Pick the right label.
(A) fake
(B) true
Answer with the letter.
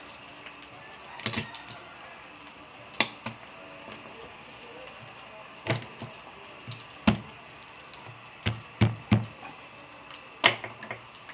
B